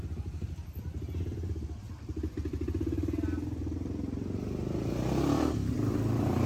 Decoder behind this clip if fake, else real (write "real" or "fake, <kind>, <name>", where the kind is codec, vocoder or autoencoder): real